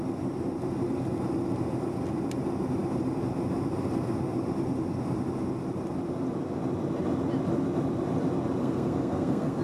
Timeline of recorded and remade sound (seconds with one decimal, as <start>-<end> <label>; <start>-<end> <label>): 0.0-8.6 recorded; 8.6-9.6 remade